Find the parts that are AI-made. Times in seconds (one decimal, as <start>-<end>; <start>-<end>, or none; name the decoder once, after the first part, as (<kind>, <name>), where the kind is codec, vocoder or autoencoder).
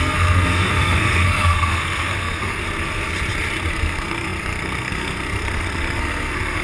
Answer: 0.0-2.6 (codec, SNAC); 3.7-6.6